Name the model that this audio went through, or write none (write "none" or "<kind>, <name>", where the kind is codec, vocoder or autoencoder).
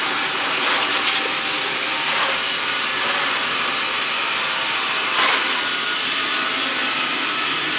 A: none